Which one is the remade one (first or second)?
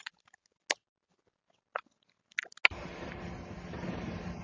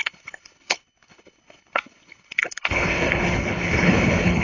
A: second